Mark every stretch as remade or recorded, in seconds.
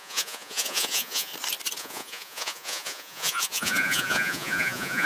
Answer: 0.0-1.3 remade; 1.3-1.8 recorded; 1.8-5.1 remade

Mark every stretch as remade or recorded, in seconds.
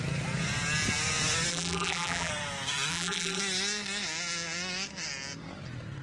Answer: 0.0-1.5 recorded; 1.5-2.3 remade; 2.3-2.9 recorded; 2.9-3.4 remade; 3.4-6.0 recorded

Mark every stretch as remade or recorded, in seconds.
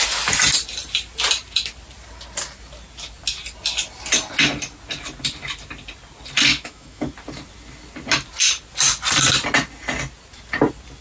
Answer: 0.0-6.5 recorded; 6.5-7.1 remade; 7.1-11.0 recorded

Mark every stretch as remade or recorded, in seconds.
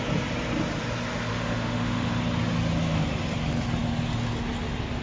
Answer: 0.0-1.3 recorded; 1.3-2.1 remade; 2.1-5.0 recorded